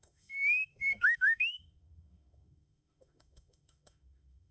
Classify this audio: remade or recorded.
remade